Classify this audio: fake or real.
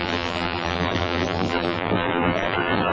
fake